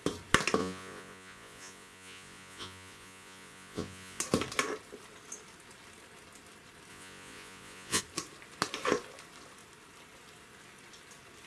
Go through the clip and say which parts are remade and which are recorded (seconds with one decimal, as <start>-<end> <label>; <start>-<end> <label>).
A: 0.0-0.6 recorded; 0.6-4.2 remade; 4.2-6.9 recorded; 6.9-8.0 remade; 8.0-11.5 recorded

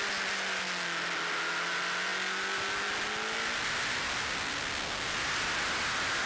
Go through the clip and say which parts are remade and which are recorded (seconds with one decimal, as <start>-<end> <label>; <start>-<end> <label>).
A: 0.0-6.3 recorded

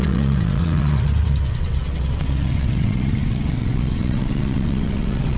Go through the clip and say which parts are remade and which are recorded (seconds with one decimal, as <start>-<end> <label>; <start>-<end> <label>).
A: 0.0-5.4 remade